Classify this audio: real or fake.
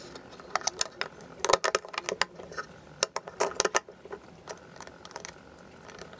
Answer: real